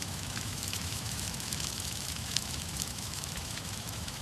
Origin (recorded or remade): remade